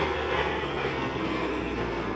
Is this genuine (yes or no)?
no